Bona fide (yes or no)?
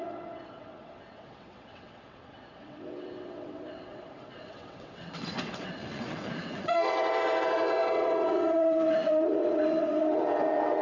no